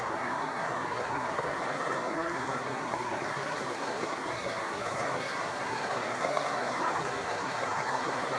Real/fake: fake